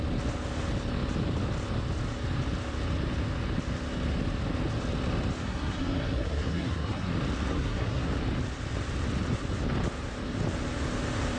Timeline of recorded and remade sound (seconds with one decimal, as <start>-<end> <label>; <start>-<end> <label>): 0.0-5.4 recorded; 5.4-7.1 remade; 7.1-7.5 recorded; 7.5-8.1 remade; 8.1-11.4 recorded